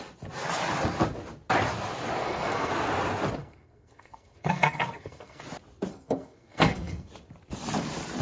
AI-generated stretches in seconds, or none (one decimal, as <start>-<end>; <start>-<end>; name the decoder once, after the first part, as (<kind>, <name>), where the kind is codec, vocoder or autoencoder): 2.2-2.7 (codec, SNAC); 3.4-5.4; 5.9-7.1